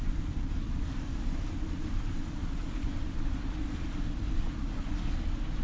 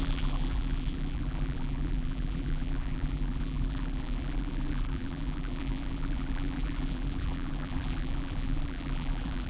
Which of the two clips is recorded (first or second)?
first